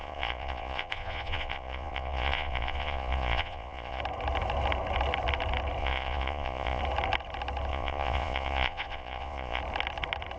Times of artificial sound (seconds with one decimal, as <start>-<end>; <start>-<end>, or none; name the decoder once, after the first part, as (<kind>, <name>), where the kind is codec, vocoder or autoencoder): 0.0-4.0 (vocoder, Vocos); 5.8-6.8; 7.7-9.6